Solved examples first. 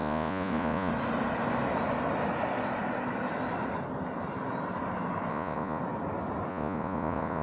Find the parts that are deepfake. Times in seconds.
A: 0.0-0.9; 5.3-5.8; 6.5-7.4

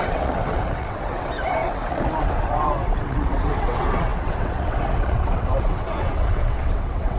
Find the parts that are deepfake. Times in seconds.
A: 0.0-7.2

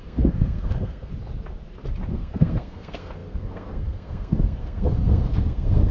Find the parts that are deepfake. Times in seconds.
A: 0.0-1.1; 2.1-5.9

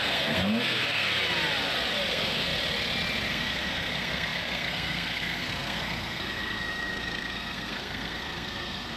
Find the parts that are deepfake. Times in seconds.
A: 0.0-1.1; 2.1-2.5; 3.3-9.0

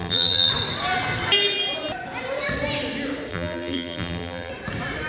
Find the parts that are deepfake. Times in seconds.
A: 0.0-0.5; 3.3-4.5

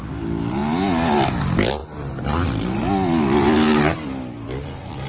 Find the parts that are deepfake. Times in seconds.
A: none